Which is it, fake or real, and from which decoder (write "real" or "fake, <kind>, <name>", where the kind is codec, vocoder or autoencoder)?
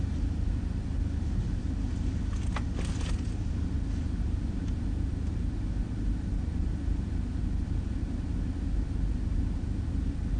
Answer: real